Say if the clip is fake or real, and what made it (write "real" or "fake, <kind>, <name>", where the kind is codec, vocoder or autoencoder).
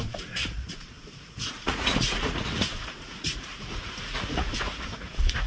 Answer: fake, vocoder, Vocos